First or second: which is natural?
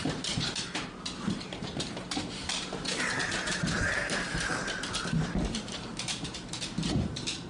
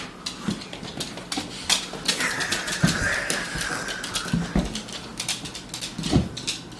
second